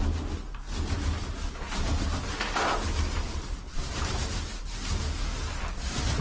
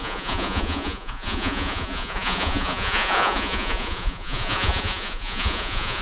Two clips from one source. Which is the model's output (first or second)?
second